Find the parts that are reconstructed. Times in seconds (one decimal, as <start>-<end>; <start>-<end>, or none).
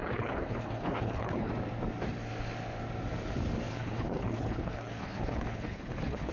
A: 0.0-1.5; 3.7-6.3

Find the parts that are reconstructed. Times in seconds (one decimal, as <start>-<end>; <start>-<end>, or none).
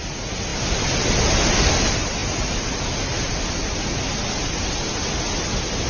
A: none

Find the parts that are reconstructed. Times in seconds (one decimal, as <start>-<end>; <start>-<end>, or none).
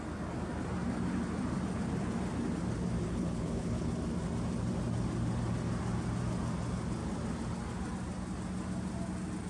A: 3.0-3.9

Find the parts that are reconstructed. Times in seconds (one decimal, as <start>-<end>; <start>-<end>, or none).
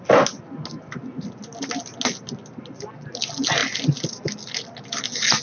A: none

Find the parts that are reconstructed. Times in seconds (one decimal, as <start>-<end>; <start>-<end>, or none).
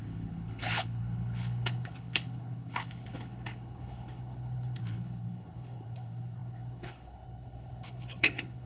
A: 0.0-8.7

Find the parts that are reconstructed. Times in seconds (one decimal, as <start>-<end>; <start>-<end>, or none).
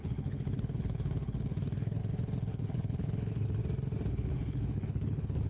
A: 0.0-2.0; 2.5-3.6; 4.1-5.5